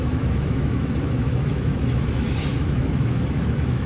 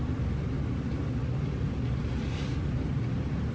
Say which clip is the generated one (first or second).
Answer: first